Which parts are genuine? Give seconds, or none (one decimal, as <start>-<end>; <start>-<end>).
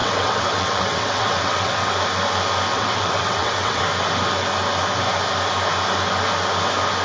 1.9-2.7; 3.8-7.0